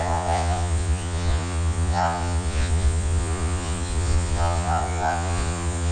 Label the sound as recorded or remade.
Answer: remade